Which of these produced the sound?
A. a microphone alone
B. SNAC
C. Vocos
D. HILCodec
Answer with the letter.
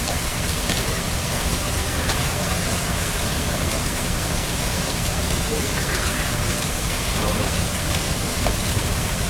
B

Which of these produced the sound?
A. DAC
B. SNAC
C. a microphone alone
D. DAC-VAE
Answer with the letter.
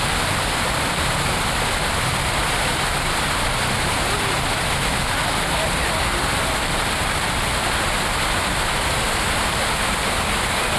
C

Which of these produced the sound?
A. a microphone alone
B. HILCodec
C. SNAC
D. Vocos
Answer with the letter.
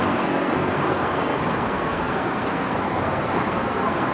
C